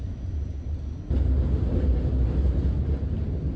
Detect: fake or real real